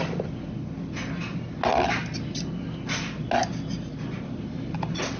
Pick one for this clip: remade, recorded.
recorded